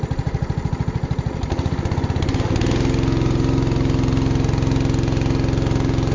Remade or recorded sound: recorded